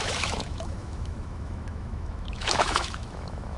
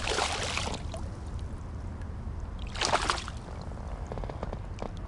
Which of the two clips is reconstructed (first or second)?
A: first